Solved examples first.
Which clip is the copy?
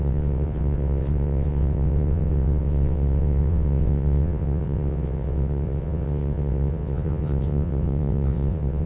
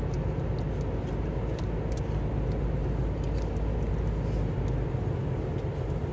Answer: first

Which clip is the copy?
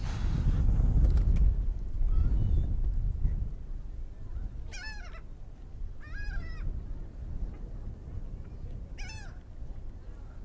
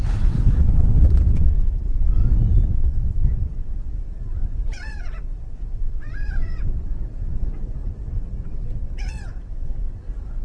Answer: second